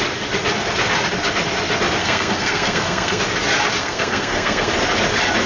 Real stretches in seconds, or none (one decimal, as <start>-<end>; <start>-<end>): 0.0-2.0; 3.2-3.8; 4.7-5.5